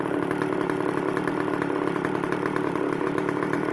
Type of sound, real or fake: real